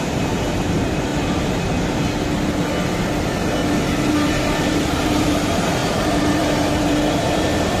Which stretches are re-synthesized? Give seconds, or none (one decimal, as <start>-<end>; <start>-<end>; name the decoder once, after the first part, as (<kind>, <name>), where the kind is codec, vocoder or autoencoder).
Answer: 0.0-1.1 (vocoder, BigVGAN v2); 4.1-7.8